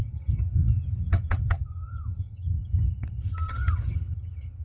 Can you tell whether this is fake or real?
fake